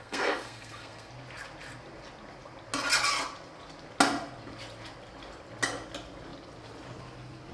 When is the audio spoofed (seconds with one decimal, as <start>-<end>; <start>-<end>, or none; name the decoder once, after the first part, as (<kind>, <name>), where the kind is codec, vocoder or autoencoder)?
0.0-1.1 (codec, SNAC)